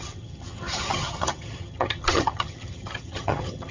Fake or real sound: fake